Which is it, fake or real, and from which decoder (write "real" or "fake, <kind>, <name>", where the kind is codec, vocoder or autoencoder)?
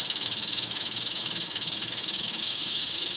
fake, autoencoder, DAC-VAE